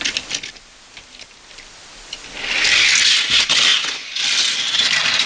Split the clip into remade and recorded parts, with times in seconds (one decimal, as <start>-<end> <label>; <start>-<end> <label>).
0.0-3.7 recorded; 3.7-4.2 remade; 4.2-5.3 recorded